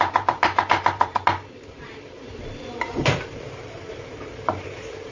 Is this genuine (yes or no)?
no